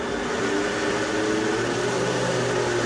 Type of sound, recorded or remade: recorded